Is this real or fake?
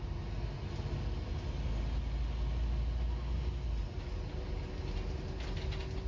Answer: real